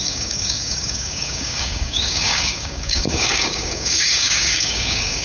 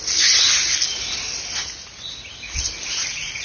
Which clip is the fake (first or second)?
first